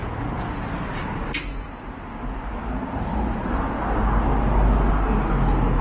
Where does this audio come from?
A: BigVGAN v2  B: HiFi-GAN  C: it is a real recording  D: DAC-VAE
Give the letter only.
C